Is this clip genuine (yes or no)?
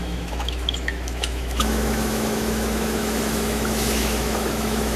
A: no